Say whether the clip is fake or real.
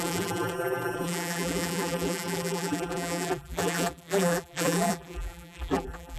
fake